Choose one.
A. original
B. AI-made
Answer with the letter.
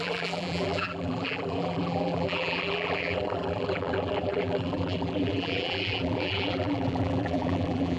B